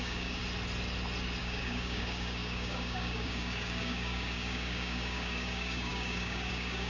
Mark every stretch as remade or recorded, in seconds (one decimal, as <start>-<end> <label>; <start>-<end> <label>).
0.0-0.4 remade; 0.4-1.4 recorded; 1.4-6.9 remade